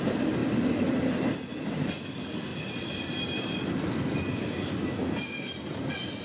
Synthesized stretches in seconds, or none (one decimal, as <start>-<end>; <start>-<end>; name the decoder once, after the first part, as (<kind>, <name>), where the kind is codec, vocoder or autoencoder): 0.4-1.0 (vocoder, BigVGAN v2); 2.5-4.7